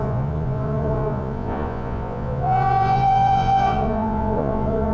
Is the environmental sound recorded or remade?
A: remade